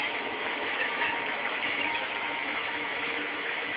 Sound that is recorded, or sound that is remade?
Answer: remade